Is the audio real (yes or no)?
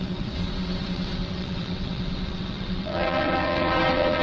no